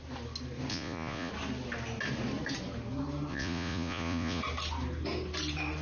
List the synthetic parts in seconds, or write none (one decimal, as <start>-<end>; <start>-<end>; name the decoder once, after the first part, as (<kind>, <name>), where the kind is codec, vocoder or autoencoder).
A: 0.7-1.3 (vocoder, Vocos); 3.3-4.4